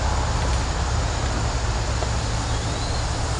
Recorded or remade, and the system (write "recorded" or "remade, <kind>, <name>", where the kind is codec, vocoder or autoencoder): recorded